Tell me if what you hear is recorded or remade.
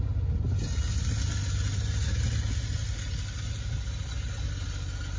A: recorded